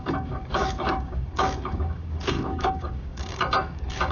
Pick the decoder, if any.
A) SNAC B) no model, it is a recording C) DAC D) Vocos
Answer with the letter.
C